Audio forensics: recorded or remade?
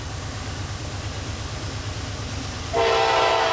recorded